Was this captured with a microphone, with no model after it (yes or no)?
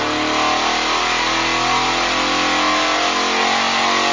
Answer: yes